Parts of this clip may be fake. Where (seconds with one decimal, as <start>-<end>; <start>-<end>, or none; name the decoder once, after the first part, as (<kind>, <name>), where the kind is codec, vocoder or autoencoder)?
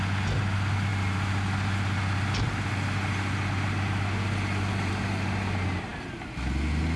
none